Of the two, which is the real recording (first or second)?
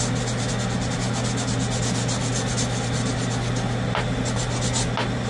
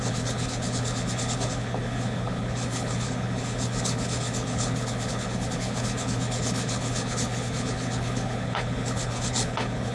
first